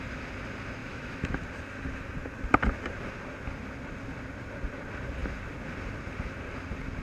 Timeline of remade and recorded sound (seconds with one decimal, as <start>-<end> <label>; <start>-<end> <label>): 0.0-0.8 recorded; 0.8-1.4 remade; 1.4-7.0 recorded